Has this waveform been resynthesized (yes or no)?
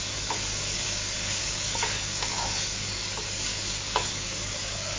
yes